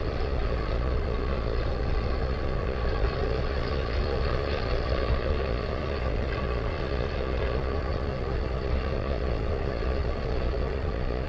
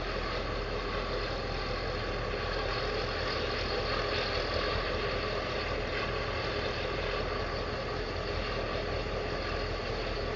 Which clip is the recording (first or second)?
second